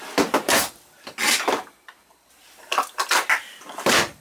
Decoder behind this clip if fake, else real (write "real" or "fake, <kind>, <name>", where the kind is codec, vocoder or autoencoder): fake, vocoder, BigVGAN v2